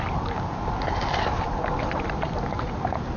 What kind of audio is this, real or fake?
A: real